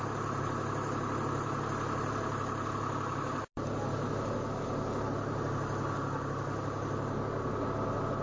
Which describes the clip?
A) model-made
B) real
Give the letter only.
B